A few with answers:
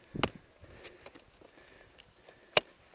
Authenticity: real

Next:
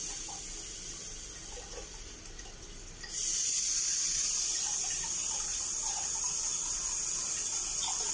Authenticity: real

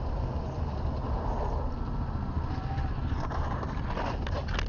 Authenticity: real